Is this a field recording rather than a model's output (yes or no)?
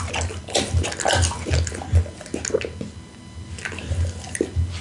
yes